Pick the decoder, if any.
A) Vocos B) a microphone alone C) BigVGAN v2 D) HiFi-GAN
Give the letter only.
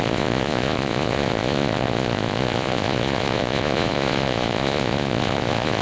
A